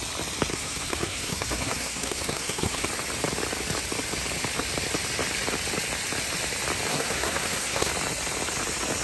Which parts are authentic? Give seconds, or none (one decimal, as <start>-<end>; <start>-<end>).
0.0-0.5; 2.9-6.9; 7.9-9.0